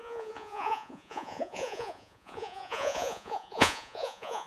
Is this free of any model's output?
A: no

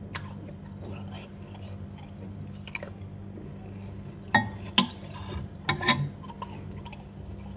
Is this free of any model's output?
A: yes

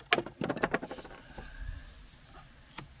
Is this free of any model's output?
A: yes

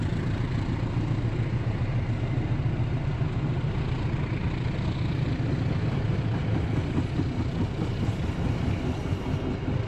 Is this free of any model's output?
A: yes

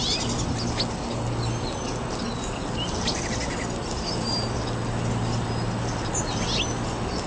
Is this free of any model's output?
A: yes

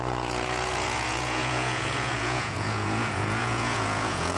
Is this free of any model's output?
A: no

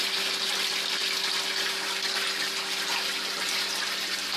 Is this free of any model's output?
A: yes